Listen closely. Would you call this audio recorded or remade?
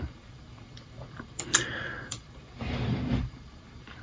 remade